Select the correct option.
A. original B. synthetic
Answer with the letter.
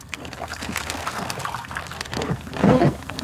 B